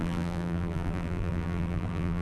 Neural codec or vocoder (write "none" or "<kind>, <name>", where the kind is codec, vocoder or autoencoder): vocoder, BigVGAN v2